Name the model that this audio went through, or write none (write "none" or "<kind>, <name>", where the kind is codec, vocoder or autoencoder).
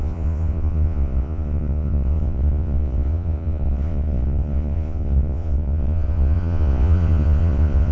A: vocoder, Vocos